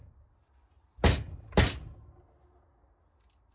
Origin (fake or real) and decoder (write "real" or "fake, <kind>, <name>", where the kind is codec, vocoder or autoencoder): real